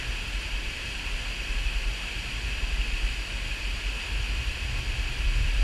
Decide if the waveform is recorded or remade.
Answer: recorded